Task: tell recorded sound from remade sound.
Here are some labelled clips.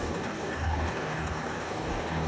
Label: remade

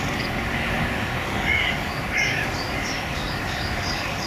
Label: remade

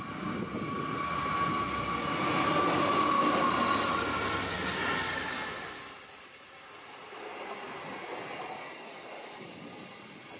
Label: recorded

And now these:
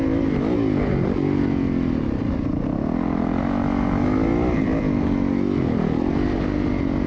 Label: recorded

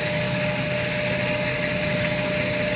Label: recorded